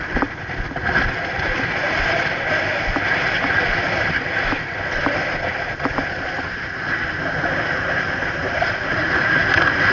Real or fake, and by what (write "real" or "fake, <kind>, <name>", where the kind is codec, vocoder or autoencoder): real